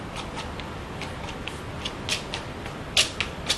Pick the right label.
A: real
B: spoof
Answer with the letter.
A